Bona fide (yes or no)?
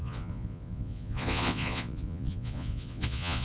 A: no